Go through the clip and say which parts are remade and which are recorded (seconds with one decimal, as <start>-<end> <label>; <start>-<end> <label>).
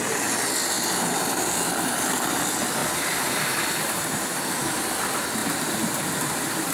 0.0-2.8 recorded; 2.8-4.9 remade; 4.9-5.4 recorded; 5.4-6.7 remade